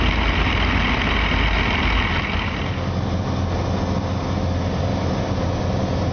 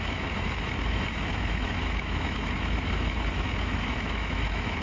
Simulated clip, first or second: second